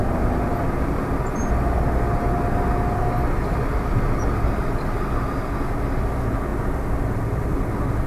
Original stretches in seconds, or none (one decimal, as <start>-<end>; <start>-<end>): 0.0-8.1